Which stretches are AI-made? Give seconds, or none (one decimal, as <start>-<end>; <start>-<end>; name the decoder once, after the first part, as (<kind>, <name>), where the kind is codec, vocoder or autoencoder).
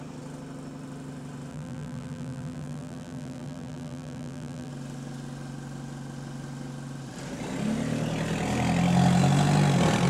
1.5-4.7 (vocoder, BigVGAN v2)